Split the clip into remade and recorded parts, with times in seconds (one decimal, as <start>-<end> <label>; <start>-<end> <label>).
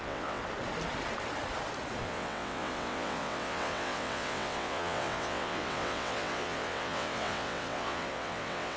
0.0-0.4 remade; 0.4-2.0 recorded; 2.0-8.8 remade